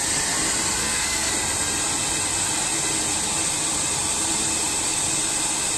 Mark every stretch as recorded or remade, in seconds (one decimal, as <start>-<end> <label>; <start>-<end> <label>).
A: 0.0-0.8 recorded; 0.8-1.3 remade; 1.3-5.8 recorded